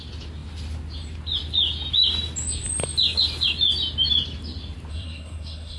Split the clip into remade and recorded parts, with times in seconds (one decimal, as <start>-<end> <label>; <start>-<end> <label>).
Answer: 0.0-4.9 recorded; 4.9-5.8 remade

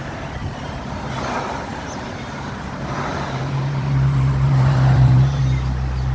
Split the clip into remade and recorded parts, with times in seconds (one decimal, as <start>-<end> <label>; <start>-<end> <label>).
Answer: 0.0-1.7 recorded; 1.7-5.4 remade; 5.4-6.1 recorded

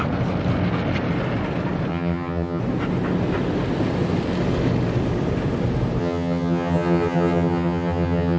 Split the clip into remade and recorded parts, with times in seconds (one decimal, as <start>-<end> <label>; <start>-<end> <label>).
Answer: 0.0-1.9 recorded; 1.9-2.6 remade; 2.6-6.0 recorded; 6.0-8.4 remade

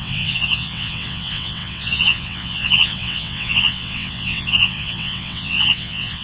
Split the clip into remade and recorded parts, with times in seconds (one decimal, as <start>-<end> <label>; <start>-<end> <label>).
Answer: 0.0-6.2 remade

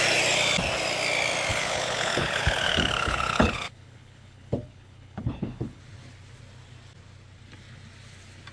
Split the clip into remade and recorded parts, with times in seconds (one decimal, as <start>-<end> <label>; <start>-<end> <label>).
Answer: 0.0-1.5 recorded; 1.5-5.8 remade; 5.8-8.5 recorded

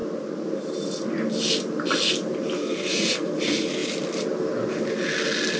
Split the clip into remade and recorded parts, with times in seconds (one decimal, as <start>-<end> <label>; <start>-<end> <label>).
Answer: 0.0-2.6 recorded; 2.6-3.3 remade; 3.3-5.6 recorded

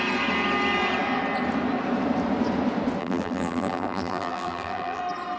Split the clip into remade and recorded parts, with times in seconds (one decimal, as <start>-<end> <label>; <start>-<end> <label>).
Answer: 0.0-3.0 recorded; 3.0-5.0 remade; 5.0-5.4 recorded

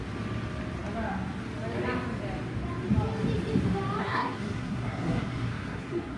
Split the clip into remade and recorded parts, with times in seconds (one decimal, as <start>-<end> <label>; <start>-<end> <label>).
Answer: 0.0-4.0 recorded; 4.0-6.2 remade